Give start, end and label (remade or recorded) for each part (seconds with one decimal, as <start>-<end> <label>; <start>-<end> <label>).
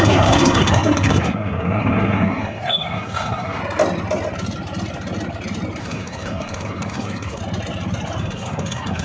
0.0-3.6 remade; 3.6-5.8 recorded; 5.8-7.4 remade; 7.4-8.2 recorded; 8.2-9.0 remade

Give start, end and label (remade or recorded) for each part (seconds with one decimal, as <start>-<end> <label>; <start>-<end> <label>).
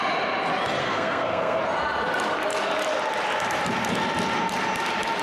0.0-0.8 recorded; 0.8-1.6 remade; 1.6-5.2 recorded